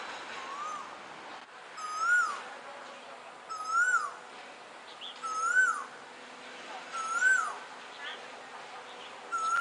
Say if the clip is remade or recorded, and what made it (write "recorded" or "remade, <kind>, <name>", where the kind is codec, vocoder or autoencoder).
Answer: recorded